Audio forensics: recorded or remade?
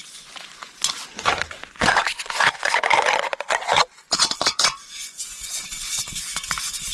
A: remade